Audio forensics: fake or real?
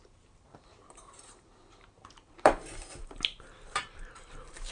fake